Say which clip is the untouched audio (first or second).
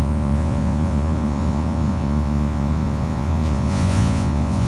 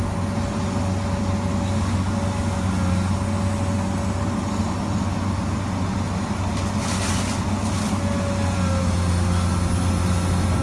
second